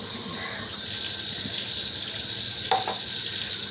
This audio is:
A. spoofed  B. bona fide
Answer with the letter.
B